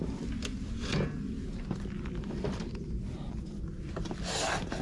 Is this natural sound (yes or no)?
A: yes